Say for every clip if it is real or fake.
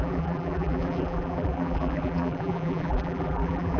fake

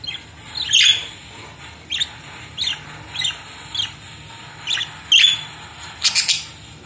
real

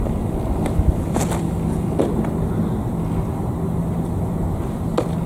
real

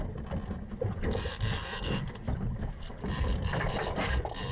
real